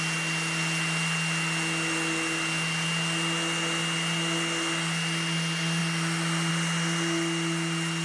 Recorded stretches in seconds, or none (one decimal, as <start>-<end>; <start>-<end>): 0.0-8.0